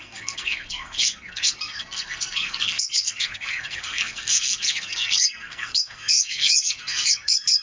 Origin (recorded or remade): remade